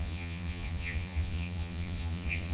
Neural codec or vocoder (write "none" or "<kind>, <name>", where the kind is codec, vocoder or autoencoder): vocoder, Vocos